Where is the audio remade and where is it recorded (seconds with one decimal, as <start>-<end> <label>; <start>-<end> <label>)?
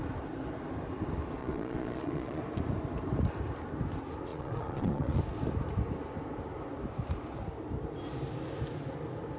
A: 0.0-1.4 recorded; 1.4-2.4 remade; 2.4-4.3 recorded; 4.3-5.2 remade; 5.2-9.4 recorded